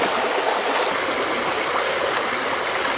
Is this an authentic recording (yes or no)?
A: yes